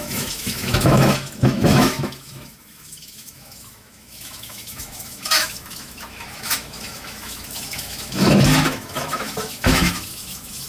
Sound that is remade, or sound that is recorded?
remade